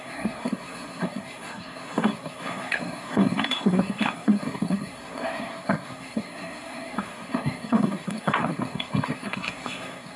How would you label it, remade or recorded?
remade